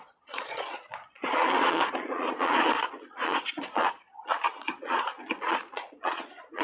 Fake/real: fake